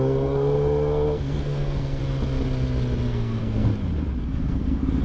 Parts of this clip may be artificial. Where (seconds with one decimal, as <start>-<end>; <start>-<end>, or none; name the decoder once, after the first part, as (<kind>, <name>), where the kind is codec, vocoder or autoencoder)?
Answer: 0.0-2.0 (codec, SNAC); 3.1-3.7; 4.2-5.0